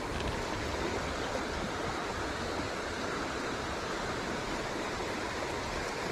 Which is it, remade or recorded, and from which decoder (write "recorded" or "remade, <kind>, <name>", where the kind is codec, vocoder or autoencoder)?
recorded